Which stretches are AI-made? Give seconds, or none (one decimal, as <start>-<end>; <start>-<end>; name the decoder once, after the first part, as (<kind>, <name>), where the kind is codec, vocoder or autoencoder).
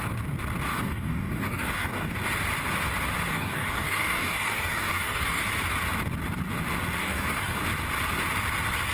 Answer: 0.7-2.2 (codec, DAC); 3.3-5.4; 7.0-7.6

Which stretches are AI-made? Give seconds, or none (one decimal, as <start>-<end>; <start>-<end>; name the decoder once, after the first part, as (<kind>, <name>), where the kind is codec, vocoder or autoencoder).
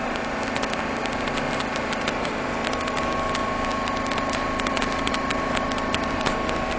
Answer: 1.0-3.0 (vocoder, BigVGAN v2); 3.4-6.3